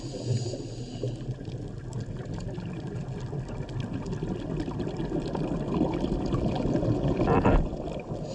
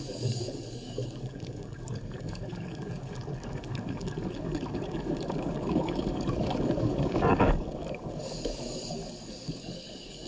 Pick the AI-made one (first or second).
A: second